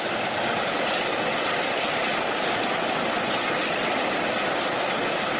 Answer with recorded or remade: recorded